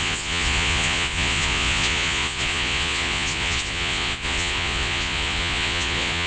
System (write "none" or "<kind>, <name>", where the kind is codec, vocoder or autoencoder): vocoder, Vocos